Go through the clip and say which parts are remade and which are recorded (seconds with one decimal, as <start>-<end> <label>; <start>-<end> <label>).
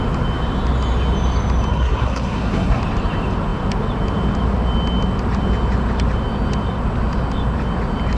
0.0-1.7 recorded; 1.7-2.8 remade; 2.8-8.2 recorded